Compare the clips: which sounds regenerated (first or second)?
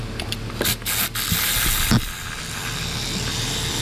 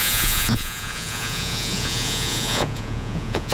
second